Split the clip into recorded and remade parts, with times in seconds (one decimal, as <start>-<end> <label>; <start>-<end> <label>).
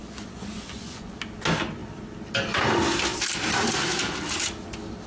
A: 0.0-1.2 remade; 1.2-5.1 recorded